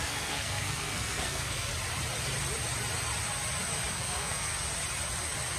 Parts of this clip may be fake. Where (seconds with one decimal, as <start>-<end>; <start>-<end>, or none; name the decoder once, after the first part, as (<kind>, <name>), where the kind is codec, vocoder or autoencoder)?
0.0-1.7 (codec, SNAC); 3.9-4.5